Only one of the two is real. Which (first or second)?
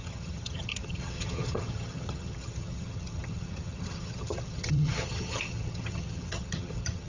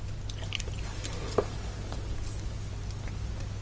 second